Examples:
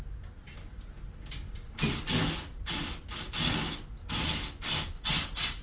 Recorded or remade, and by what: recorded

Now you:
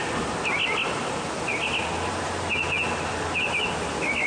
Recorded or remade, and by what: recorded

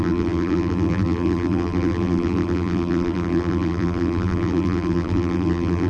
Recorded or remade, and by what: remade, vocoder, BigVGAN v2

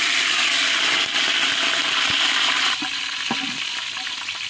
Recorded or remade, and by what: recorded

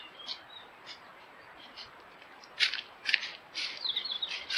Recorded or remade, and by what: remade, vocoder, BigVGAN v2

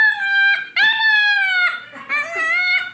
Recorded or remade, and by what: recorded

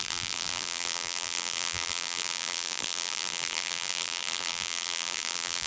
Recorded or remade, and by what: remade, vocoder, BigVGAN v2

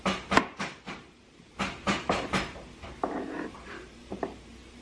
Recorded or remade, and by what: remade, vocoder, BigVGAN v2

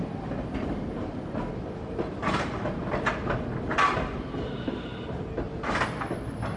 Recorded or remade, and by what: recorded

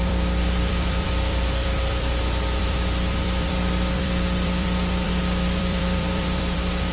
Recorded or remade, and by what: remade, vocoder, BigVGAN v2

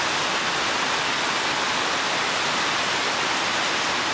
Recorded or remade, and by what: recorded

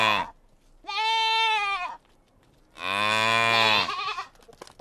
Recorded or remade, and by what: recorded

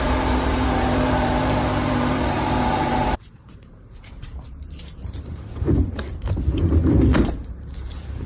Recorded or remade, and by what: remade, vocoder, BigVGAN v2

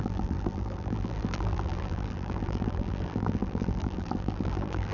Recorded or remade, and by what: remade, vocoder, BigVGAN v2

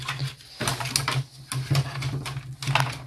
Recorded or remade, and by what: recorded